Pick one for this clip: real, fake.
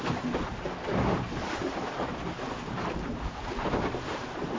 real